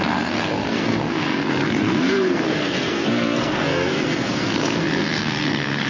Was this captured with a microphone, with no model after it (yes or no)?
no